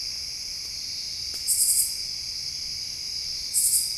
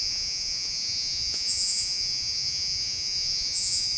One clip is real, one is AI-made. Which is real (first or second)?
first